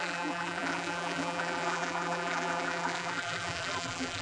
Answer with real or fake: fake